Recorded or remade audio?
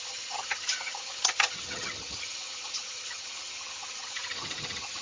remade